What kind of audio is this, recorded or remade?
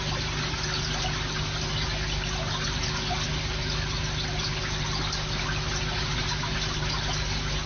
recorded